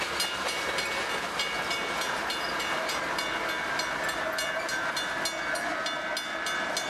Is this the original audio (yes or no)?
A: yes